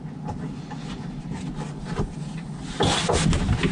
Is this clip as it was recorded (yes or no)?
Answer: yes